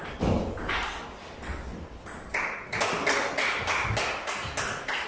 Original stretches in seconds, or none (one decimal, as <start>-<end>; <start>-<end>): 0.0-5.1